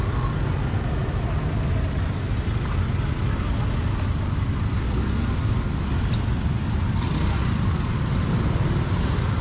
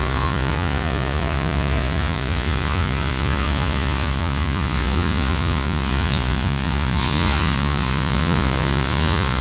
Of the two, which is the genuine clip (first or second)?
first